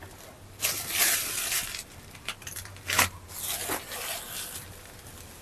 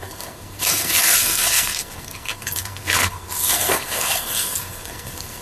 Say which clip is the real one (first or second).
first